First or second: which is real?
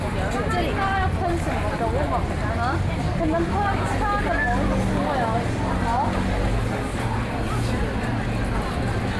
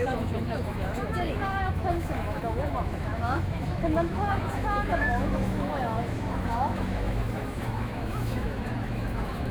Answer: first